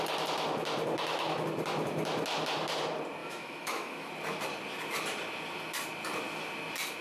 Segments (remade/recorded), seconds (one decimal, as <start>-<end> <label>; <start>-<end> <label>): 0.0-3.2 recorded; 3.2-4.1 remade; 4.1-7.0 recorded